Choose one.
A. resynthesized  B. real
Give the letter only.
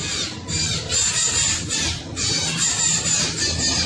B